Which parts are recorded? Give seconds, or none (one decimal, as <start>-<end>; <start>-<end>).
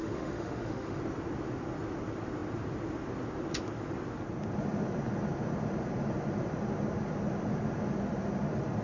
1.0-8.8